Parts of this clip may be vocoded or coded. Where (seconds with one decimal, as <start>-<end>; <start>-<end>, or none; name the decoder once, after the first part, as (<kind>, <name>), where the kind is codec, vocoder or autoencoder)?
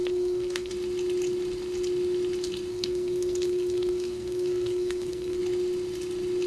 0.0-0.7 (codec, SNAC); 2.7-5.4